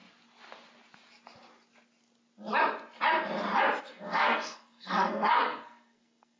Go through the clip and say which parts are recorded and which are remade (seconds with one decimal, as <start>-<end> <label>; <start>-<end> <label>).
0.0-3.8 recorded; 3.8-6.4 remade